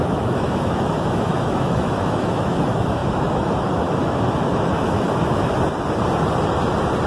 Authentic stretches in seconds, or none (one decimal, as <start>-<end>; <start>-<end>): 5.5-7.1